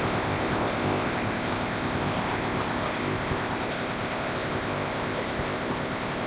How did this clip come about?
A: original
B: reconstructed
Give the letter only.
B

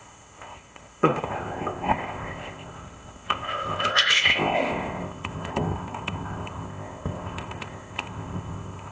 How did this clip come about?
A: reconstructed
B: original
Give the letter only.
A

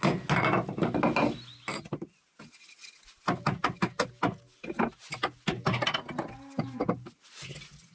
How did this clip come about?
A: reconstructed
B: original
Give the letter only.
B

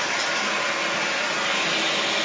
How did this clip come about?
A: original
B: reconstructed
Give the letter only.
A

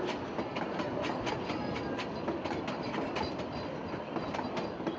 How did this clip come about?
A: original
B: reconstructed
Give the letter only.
A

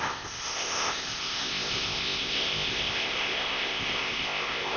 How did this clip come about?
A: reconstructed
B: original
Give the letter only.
A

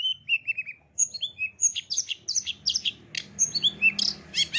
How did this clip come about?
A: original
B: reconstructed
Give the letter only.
A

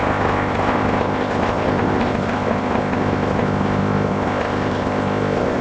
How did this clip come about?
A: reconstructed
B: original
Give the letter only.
A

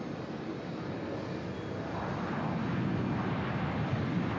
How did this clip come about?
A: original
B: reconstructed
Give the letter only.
A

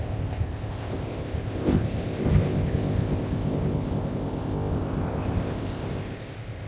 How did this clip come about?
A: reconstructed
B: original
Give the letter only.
A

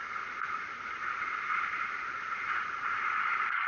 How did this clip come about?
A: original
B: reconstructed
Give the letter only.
A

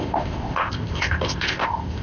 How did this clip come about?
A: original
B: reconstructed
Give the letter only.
B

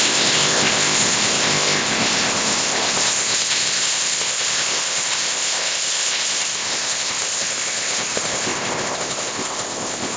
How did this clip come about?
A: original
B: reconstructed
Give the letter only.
B